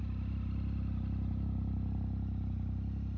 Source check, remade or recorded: recorded